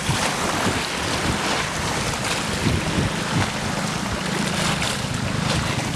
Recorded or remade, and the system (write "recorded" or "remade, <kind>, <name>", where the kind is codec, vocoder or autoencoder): recorded